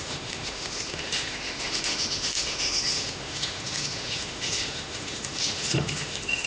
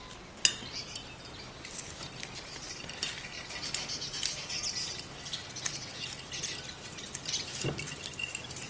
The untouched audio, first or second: second